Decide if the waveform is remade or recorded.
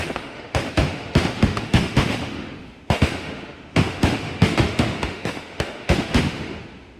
remade